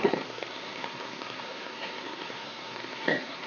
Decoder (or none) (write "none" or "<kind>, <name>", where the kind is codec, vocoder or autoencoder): codec, SNAC